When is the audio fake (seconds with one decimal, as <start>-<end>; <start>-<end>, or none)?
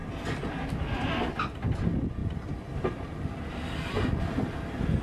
none